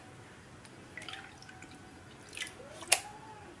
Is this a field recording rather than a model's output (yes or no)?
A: yes